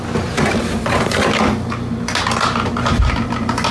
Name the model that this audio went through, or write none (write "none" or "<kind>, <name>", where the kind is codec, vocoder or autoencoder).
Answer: none